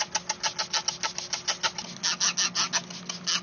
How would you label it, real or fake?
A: real